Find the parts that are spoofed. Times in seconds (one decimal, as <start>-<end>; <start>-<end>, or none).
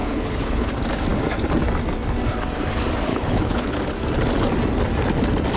0.0-0.7; 3.1-3.8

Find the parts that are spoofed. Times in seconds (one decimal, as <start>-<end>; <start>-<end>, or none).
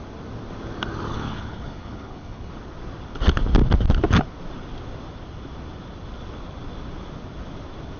1.1-2.5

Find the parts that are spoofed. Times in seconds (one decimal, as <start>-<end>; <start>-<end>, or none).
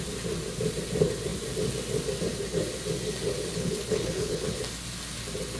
3.5-4.6